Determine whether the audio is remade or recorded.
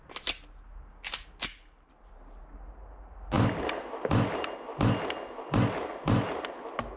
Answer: recorded